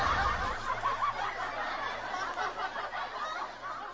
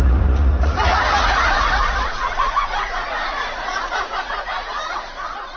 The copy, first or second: second